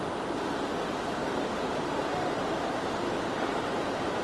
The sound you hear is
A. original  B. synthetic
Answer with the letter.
A